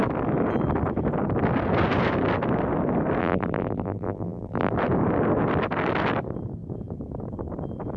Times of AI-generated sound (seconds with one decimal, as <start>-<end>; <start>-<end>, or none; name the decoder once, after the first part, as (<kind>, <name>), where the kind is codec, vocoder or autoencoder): 3.2-4.7 (vocoder, BigVGAN v2)